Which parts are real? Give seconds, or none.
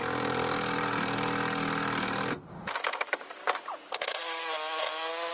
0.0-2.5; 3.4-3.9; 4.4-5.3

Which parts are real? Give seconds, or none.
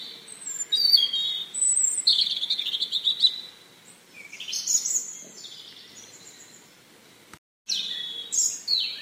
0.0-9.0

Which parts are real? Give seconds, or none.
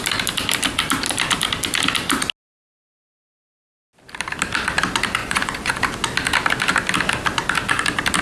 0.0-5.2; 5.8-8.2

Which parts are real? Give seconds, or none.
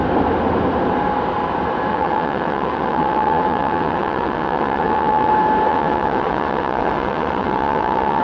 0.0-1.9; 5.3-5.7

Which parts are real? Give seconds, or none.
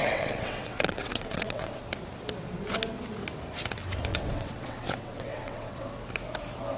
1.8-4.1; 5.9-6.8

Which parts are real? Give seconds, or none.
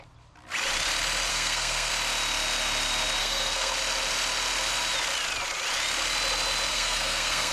0.0-1.3; 1.9-3.2; 3.7-6.7